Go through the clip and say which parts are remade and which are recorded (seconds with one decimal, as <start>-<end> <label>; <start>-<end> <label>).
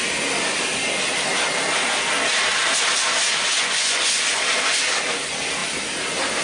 0.0-3.6 recorded; 3.6-4.1 remade; 4.1-6.4 recorded